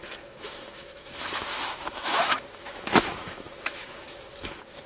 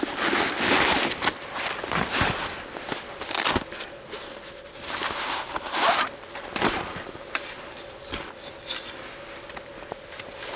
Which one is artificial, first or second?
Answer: first